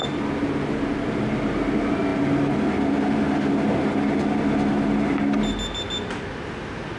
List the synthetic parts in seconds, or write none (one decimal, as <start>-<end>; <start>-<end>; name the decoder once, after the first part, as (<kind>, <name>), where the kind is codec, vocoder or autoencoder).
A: none